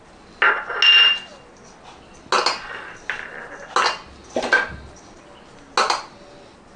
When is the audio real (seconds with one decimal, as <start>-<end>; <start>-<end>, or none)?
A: 0.0-4.2; 5.2-6.8